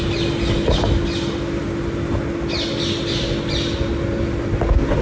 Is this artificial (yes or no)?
no